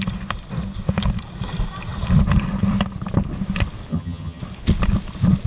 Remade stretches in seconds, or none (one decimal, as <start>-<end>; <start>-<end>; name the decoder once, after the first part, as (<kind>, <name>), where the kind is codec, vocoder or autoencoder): 3.9-4.4 (vocoder, HiFi-GAN)